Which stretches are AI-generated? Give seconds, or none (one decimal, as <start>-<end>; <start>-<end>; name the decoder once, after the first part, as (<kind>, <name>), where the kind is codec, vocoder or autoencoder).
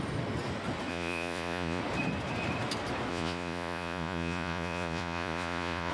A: 0.9-1.8 (vocoder, Vocos); 3.1-5.9